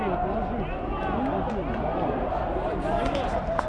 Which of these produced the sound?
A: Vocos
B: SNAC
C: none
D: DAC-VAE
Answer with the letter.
C